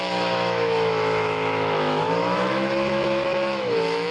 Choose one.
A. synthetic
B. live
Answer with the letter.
A